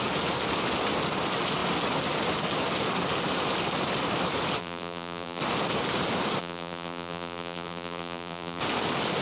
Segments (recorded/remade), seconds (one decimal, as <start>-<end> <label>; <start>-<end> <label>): 0.0-4.6 recorded; 4.6-5.4 remade; 5.4-6.4 recorded; 6.4-8.6 remade; 8.6-9.2 recorded